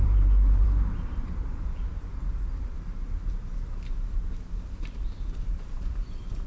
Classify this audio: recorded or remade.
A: remade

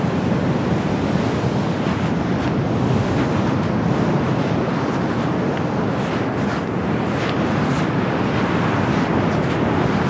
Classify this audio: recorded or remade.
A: recorded